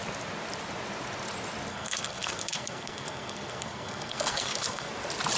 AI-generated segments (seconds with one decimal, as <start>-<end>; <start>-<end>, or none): 1.7-4.9